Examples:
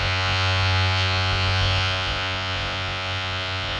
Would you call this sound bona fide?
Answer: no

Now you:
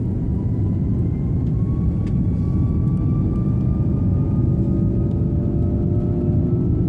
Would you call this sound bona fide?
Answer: yes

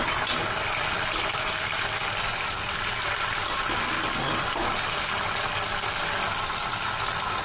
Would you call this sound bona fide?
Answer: yes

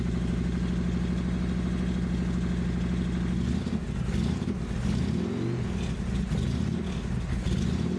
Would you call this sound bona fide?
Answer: yes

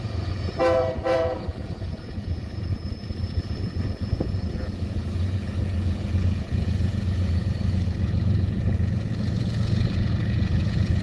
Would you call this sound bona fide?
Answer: no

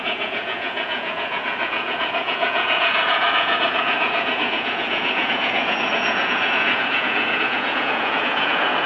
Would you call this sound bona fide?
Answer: no